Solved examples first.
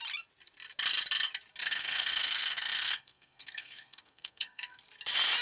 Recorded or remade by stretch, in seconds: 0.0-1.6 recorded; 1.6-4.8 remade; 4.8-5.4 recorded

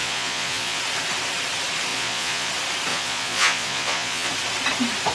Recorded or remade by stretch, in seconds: 0.0-0.8 remade; 0.8-1.9 recorded; 1.9-2.5 remade; 2.5-2.9 recorded; 2.9-4.3 remade; 4.3-5.1 recorded

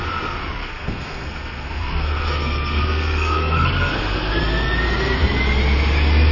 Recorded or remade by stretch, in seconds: 0.0-0.6 recorded; 0.6-4.4 remade; 4.4-6.3 recorded

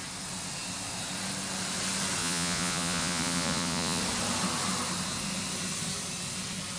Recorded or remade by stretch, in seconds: 0.0-2.2 recorded; 2.2-4.0 remade; 4.0-6.8 recorded

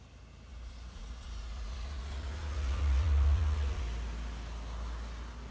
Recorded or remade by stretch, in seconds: 0.0-0.5 recorded; 0.5-3.8 remade; 3.8-5.5 recorded